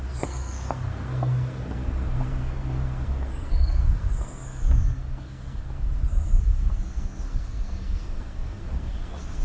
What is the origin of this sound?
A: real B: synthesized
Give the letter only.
B